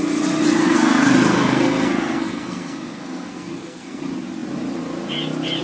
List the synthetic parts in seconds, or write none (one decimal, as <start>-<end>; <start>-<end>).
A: 0.6-4.0